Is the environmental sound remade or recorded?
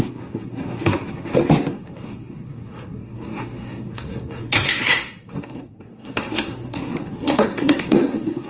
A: remade